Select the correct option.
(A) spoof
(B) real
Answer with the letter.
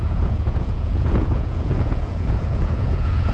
A